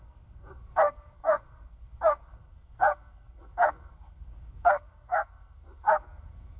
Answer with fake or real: fake